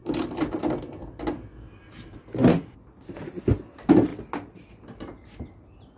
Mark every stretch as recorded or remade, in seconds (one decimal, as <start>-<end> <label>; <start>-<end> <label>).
0.0-6.0 recorded